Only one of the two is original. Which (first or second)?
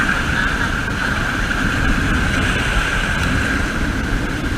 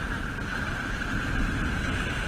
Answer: second